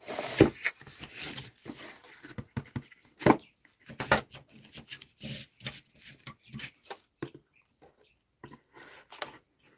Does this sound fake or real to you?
real